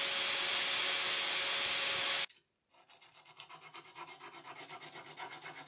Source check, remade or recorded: recorded